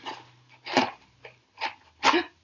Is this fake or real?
real